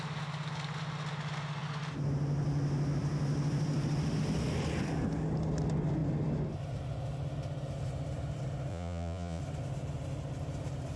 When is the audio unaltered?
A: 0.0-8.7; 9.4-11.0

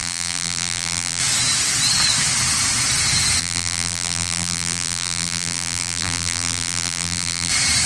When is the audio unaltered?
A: 1.2-3.4; 7.5-7.9

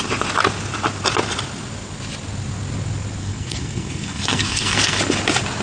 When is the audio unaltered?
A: 0.0-3.2; 5.0-5.6